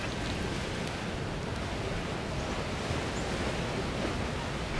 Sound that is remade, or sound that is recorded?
recorded